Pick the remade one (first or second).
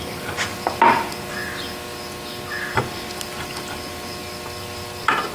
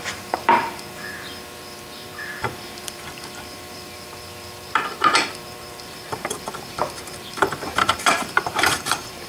second